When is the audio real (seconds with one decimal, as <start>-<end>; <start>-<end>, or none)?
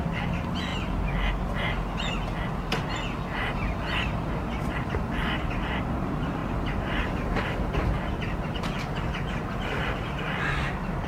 0.0-6.4; 7.1-11.1